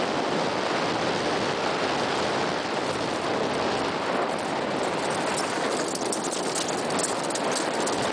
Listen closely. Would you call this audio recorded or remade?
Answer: recorded